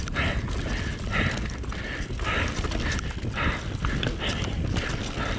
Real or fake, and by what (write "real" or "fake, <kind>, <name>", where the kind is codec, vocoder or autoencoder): real